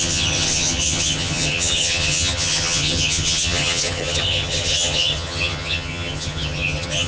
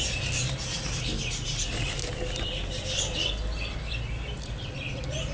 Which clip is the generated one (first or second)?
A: first